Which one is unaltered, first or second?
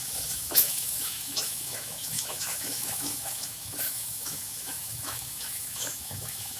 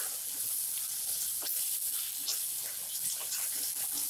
second